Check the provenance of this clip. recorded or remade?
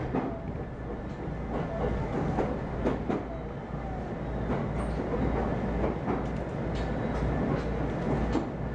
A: recorded